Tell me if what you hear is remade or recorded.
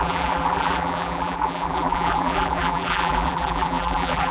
remade